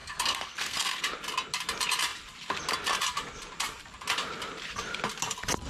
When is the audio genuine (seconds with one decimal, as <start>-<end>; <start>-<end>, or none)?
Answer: 1.0-5.7